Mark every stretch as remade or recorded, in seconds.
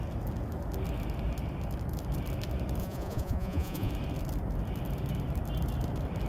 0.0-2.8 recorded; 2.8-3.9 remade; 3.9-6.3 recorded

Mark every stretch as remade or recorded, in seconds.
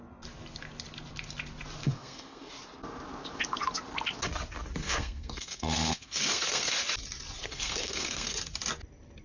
0.0-1.8 recorded; 1.8-2.5 remade; 2.5-4.8 recorded; 4.8-6.7 remade; 6.7-7.4 recorded; 7.4-8.4 remade; 8.4-9.2 recorded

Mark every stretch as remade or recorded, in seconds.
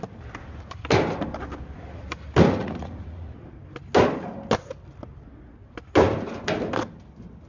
0.0-2.6 recorded; 2.6-3.5 remade; 3.5-7.5 recorded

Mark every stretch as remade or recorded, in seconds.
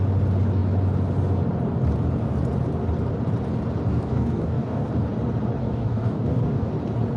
0.0-3.9 recorded; 3.9-4.9 remade; 4.9-5.6 recorded; 5.6-6.7 remade; 6.7-7.2 recorded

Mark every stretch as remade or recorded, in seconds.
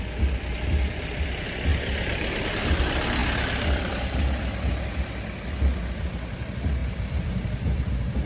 0.0-1.7 recorded; 1.7-2.8 remade; 2.8-3.2 recorded; 3.2-3.9 remade; 3.9-6.8 recorded; 6.8-7.9 remade; 7.9-8.3 recorded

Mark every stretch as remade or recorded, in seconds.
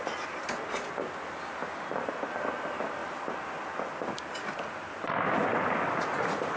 0.0-6.6 recorded